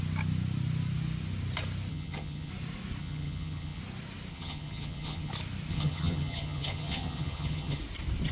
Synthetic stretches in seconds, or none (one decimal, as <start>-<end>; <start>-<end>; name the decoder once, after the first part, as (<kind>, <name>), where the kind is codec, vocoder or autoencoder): 1.9-2.5 (vocoder, HiFi-GAN); 3.0-3.8; 4.3-5.3; 5.7-7.8